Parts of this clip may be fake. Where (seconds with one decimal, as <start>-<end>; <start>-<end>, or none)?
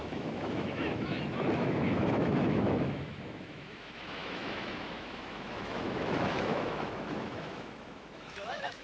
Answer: 0.0-8.8